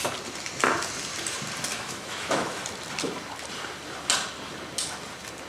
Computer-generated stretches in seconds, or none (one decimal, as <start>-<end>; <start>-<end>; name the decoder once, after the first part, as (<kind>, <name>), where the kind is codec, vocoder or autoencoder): 1.7-2.6 (autoencoder, DAC-VAE)